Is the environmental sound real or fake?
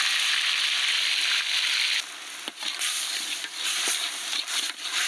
real